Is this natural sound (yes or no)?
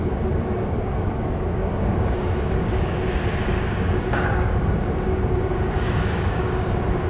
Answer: no